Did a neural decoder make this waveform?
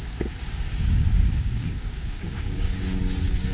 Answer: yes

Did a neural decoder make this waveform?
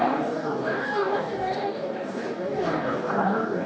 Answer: yes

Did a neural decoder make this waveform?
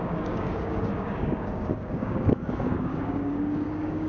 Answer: yes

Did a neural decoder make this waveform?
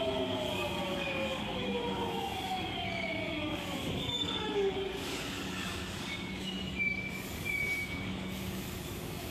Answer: yes